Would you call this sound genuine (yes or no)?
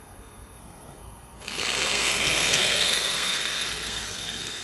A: no